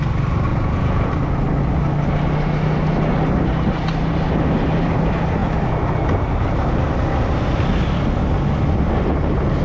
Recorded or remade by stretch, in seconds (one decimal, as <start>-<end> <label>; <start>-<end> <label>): 0.0-0.5 recorded; 0.5-1.0 remade; 1.0-9.6 recorded